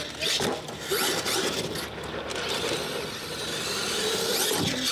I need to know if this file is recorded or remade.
recorded